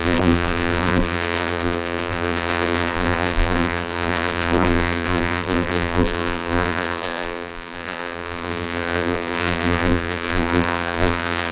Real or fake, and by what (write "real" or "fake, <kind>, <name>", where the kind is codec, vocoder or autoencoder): fake, vocoder, BigVGAN v2